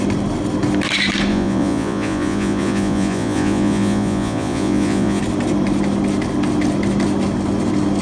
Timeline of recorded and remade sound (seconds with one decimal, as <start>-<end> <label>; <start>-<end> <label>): 0.0-1.3 recorded; 1.3-5.2 remade; 5.2-8.0 recorded